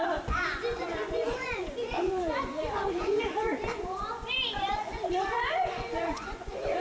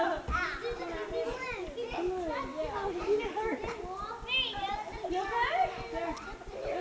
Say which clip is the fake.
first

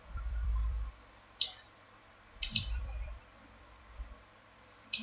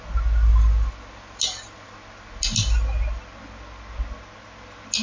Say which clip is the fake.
first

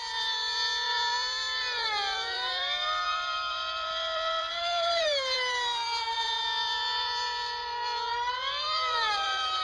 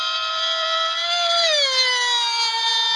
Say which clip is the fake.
first